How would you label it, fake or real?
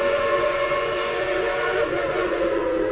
fake